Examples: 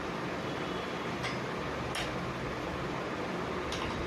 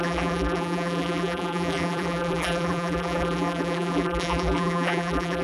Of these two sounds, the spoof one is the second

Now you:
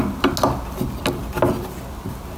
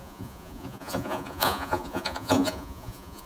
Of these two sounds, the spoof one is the second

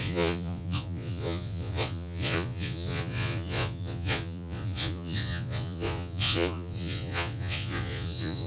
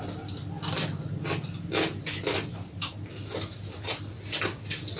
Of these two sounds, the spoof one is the first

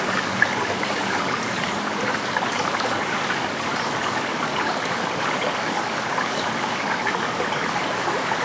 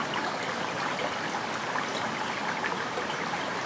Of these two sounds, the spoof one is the first